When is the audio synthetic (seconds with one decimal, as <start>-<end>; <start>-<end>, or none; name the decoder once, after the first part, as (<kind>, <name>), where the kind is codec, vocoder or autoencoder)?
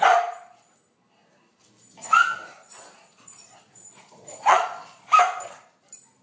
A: 2.6-5.1 (vocoder, Vocos)